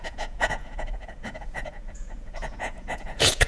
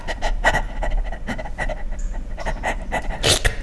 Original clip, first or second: second